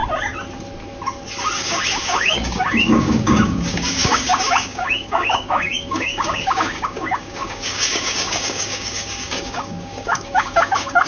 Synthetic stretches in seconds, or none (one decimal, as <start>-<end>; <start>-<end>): 1.6-11.1